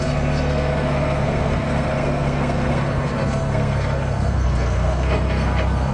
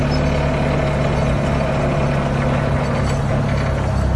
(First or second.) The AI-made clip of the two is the first